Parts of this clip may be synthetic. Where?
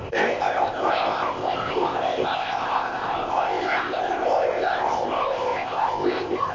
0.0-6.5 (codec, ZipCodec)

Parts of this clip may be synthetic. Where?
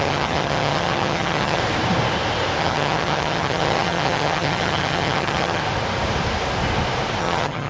0.0-1.6 (vocoder, HiFi-GAN); 2.6-5.6; 7.2-7.7